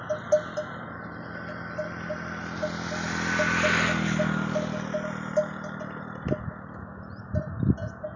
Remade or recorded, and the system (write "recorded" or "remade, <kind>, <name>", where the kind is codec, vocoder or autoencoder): recorded